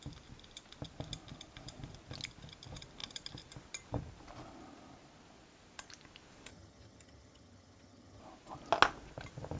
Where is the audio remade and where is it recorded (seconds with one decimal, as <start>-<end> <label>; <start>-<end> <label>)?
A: 0.0-6.5 recorded; 6.5-8.2 remade; 8.2-9.6 recorded

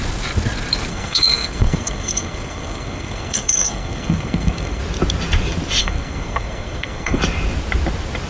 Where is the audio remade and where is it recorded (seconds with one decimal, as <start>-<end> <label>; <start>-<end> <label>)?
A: 0.0-0.9 recorded; 0.9-4.8 remade; 4.8-5.8 recorded; 5.8-7.2 remade; 7.2-8.3 recorded

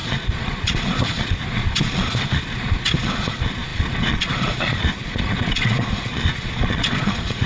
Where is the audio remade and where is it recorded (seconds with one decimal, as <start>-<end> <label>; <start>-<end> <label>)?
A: 0.0-7.5 remade

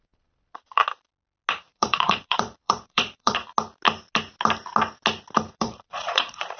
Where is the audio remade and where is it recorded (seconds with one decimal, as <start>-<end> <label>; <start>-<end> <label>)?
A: 0.0-0.8 remade; 0.8-1.7 recorded; 1.7-3.4 remade; 3.4-5.6 recorded; 5.6-6.6 remade

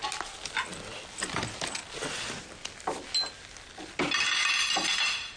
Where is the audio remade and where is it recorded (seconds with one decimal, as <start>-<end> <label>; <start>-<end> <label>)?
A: 0.0-5.4 recorded